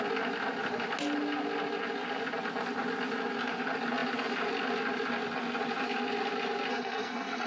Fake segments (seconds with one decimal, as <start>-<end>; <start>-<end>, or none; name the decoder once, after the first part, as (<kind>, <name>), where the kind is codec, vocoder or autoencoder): 6.7-7.5 (codec, SNAC)